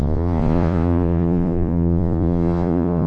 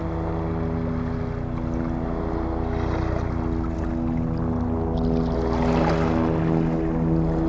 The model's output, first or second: first